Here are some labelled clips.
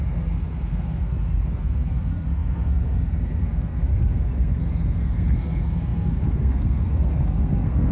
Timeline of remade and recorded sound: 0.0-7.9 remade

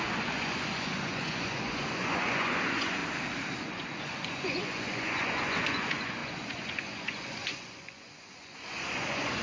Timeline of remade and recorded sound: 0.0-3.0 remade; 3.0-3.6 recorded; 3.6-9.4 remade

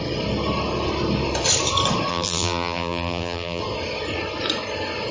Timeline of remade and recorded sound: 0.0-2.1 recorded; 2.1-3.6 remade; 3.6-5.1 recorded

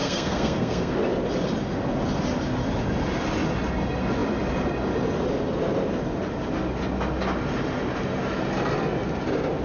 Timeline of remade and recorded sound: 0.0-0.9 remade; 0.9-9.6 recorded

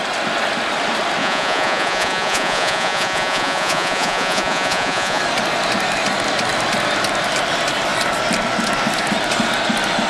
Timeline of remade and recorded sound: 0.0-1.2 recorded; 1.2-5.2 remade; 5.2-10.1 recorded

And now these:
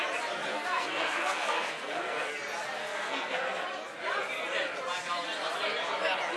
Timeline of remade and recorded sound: 0.0-0.5 recorded; 0.5-2.3 remade; 2.3-2.8 recorded; 2.8-3.6 remade; 3.6-6.4 recorded

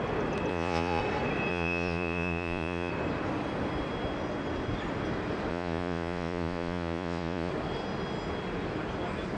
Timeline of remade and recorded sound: 0.0-0.5 recorded; 0.5-1.0 remade; 1.0-1.5 recorded; 1.5-2.9 remade; 2.9-5.5 recorded; 5.5-7.5 remade; 7.5-9.4 recorded

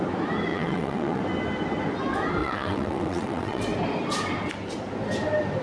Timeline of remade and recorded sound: 0.0-0.5 recorded; 0.5-1.2 remade; 1.2-2.4 recorded; 2.4-3.6 remade; 3.6-5.6 recorded